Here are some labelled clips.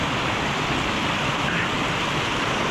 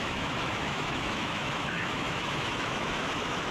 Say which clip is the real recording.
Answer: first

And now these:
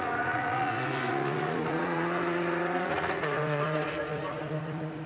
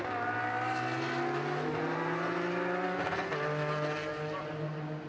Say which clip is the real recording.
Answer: second